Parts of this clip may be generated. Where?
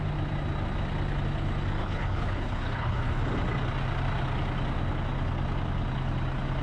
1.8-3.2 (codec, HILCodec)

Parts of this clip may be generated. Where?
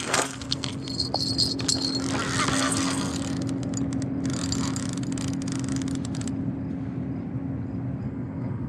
0.0-0.7 (codec, SNAC); 2.5-3.1; 8.0-8.7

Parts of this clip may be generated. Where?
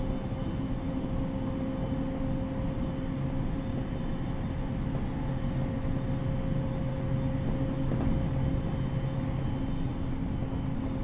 none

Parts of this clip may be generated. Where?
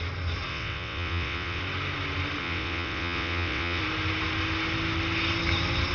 0.5-1.6 (vocoder, WaveNeXt); 2.4-3.8